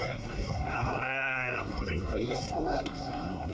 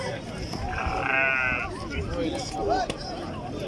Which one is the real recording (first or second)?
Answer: second